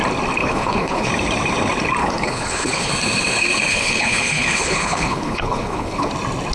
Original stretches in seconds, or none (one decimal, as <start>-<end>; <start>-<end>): 0.0-0.4; 1.1-2.0; 2.9-3.7; 6.1-6.5